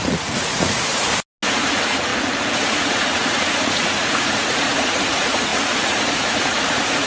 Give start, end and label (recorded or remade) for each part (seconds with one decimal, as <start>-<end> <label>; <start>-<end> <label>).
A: 0.0-0.9 remade; 0.9-1.5 recorded; 1.5-7.1 remade